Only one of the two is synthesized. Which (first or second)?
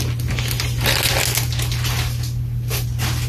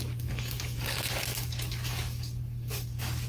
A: second